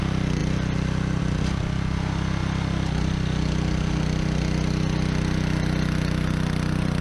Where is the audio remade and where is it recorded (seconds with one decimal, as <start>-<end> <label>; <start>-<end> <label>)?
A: 0.0-7.0 recorded